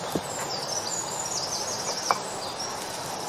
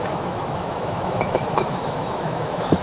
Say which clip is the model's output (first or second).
second